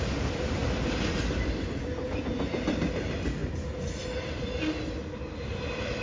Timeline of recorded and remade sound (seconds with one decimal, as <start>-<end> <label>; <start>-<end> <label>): 0.0-6.0 recorded